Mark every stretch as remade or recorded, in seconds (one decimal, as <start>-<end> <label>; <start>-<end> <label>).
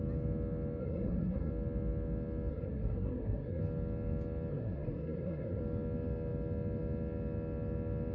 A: 0.0-0.8 recorded; 0.8-1.5 remade; 1.5-2.5 recorded; 2.5-3.6 remade; 3.6-4.5 recorded; 4.5-5.6 remade; 5.6-8.1 recorded